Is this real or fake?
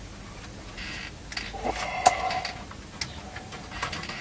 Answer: real